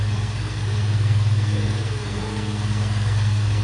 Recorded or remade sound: remade